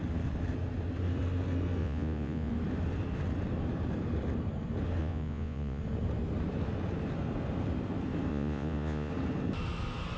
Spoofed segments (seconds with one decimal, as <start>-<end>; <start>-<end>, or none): 1.8-2.5; 5.0-5.8; 8.3-9.1